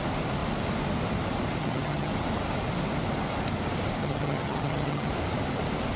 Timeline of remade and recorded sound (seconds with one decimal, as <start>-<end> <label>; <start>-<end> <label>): 0.0-1.6 recorded; 1.6-2.1 remade; 2.1-4.0 recorded; 4.0-5.1 remade; 5.1-6.0 recorded